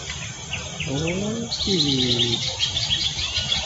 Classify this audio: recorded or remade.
recorded